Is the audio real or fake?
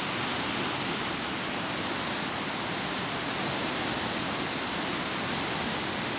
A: real